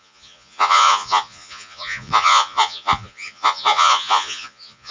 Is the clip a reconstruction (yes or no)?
yes